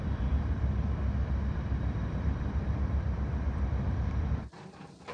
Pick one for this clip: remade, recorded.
remade